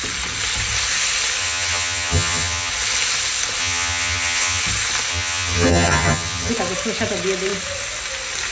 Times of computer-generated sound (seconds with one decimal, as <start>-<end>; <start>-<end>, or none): 1.4-2.7; 3.6-4.6; 5.1-6.5